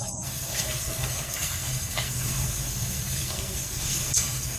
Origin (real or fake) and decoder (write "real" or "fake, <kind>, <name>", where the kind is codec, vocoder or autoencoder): fake, codec, SNAC